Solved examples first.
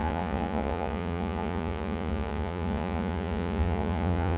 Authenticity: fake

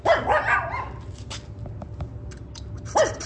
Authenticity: real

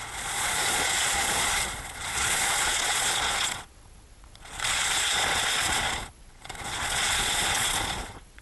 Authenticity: fake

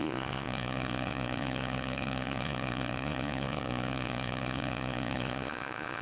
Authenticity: fake